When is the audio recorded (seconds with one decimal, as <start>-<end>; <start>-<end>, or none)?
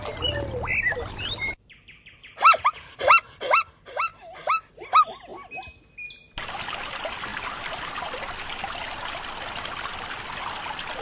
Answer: 0.0-4.1; 4.7-11.0